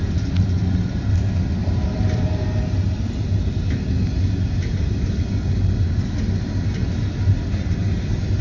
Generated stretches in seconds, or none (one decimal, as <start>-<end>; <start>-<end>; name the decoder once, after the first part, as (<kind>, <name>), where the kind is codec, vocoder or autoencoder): 1.6-2.3 (vocoder, BigVGAN v2)